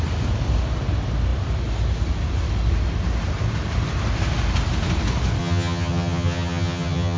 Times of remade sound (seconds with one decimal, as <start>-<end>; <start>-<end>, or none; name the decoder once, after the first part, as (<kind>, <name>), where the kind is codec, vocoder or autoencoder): 5.4-7.2 (vocoder, HiFi-GAN)